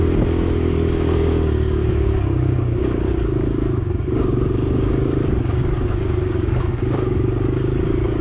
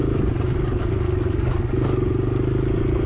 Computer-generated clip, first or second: first